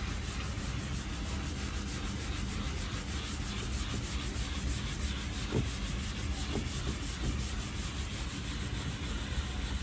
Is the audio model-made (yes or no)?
no